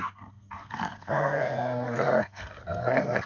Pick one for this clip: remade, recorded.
remade